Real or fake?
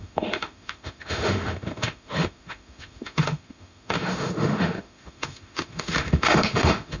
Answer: fake